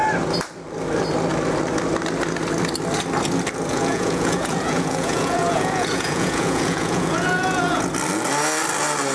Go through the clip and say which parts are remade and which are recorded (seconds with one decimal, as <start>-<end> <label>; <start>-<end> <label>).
0.0-3.7 recorded; 3.7-7.9 remade; 7.9-9.1 recorded